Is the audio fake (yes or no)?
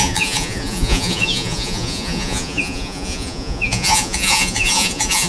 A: yes